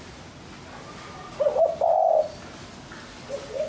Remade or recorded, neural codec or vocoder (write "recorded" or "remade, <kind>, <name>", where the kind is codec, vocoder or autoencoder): recorded